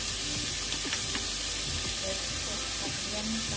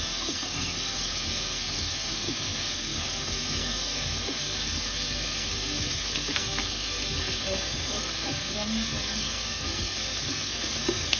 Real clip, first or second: first